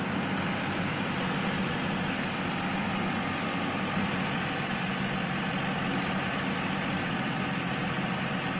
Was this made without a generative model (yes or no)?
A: yes